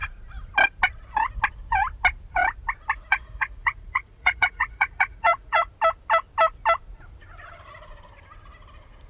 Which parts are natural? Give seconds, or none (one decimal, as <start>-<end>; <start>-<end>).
0.0-3.1; 5.7-9.1

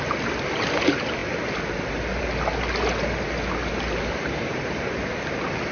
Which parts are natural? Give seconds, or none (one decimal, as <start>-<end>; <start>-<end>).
0.0-5.7

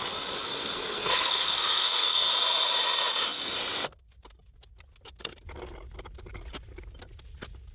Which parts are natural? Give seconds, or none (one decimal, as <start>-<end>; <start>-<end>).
0.0-0.4; 2.3-7.7

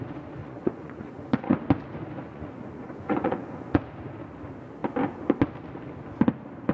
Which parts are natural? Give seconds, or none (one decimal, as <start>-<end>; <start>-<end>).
0.0-0.4; 1.6-2.3; 3.8-6.7

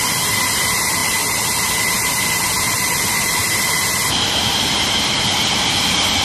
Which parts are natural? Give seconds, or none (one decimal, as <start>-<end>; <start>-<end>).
0.0-6.2